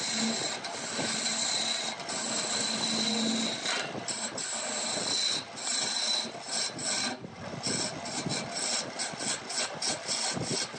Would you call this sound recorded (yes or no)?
yes